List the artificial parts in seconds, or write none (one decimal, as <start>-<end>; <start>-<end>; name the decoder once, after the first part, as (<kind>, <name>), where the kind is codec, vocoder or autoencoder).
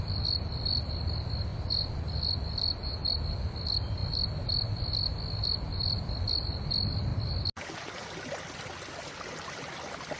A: 0.0-1.5 (vocoder, BigVGAN v2); 3.3-7.1; 7.7-10.2